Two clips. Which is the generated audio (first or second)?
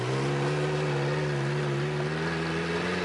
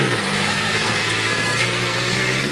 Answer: second